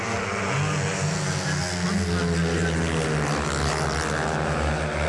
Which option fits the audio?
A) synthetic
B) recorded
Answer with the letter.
B